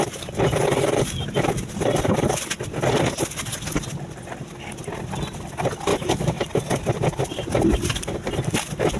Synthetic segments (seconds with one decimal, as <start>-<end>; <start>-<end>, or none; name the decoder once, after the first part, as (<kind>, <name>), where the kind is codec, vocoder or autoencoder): 5.9-6.4 (autoencoder, DAC-VAE)